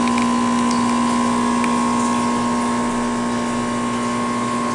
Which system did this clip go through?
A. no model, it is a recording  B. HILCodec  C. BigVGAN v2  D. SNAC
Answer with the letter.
A